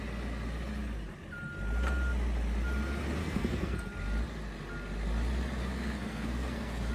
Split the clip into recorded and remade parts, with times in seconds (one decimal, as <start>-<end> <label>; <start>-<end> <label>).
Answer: 0.0-3.2 recorded; 3.2-3.8 remade; 3.8-5.6 recorded; 5.6-6.9 remade